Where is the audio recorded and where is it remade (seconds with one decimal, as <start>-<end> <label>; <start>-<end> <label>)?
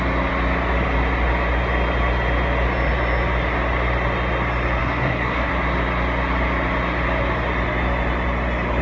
0.0-4.8 recorded; 4.8-5.5 remade; 5.5-8.8 recorded